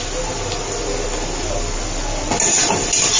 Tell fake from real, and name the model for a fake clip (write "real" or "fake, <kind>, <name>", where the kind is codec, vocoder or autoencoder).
real